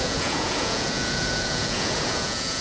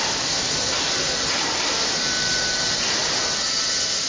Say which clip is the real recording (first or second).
second